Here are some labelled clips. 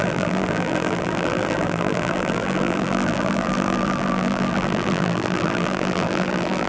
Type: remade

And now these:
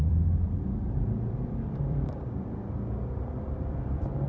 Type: remade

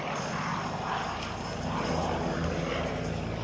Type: recorded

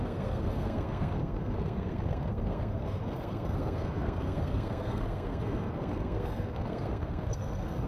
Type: remade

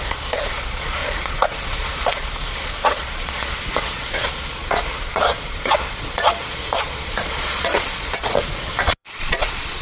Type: remade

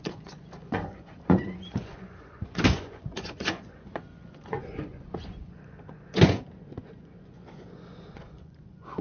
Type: remade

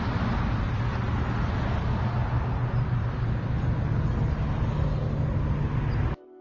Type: recorded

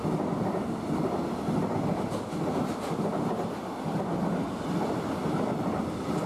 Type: recorded